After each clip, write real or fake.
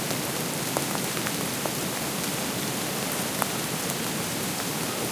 fake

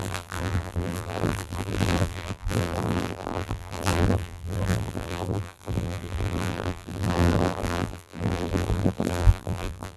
fake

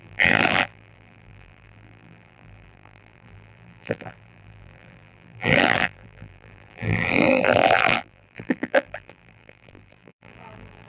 fake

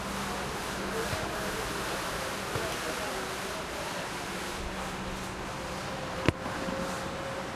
real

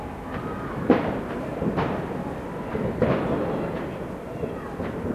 fake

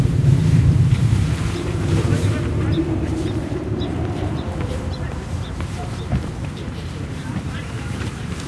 fake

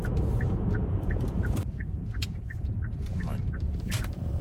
fake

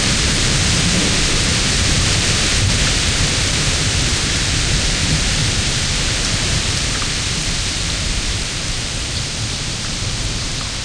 fake